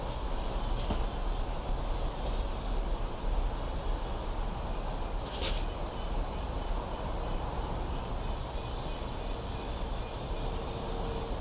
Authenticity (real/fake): real